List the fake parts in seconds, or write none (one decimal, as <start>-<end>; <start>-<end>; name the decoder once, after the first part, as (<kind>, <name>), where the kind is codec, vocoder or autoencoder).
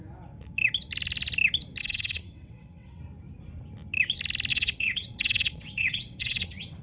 1.8-3.0 (vocoder, WaveNeXt); 4.5-6.8